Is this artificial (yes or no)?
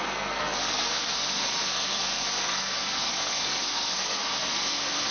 yes